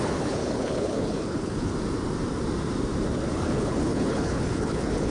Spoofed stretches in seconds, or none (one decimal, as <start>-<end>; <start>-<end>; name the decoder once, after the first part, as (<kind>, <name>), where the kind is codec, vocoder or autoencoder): 0.0-1.7 (codec, HILCodec); 3.3-5.1